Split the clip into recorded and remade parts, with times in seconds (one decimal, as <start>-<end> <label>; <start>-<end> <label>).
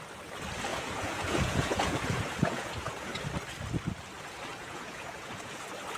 0.0-0.7 recorded; 0.7-3.2 remade; 3.2-4.5 recorded; 4.5-5.6 remade; 5.6-6.0 recorded